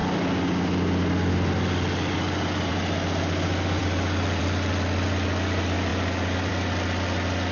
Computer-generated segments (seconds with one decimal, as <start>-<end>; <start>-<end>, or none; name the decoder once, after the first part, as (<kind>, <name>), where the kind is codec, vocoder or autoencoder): none